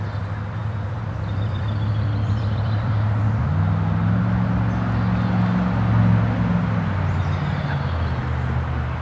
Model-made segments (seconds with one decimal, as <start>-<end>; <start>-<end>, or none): 0.6-2.9